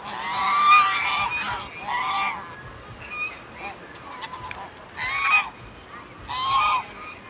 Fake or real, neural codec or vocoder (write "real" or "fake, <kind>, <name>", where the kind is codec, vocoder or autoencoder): real